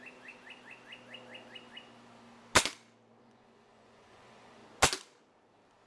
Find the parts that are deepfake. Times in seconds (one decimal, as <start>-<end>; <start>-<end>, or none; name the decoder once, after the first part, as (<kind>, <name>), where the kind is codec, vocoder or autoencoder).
3.2-4.6 (vocoder, Vocos)